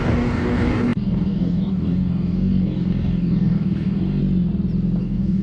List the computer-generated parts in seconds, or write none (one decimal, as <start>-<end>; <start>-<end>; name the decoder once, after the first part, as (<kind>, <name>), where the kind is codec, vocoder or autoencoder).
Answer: 0.0-4.2 (codec, DAC); 5.0-5.4